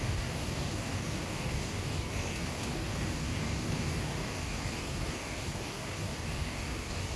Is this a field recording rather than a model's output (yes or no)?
no